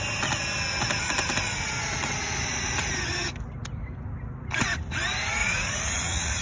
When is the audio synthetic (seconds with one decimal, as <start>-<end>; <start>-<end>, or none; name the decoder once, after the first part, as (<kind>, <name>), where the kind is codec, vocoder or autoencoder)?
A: 5.4-6.4 (vocoder, Vocos)